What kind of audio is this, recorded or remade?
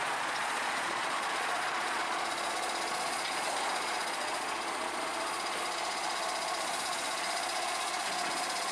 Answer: remade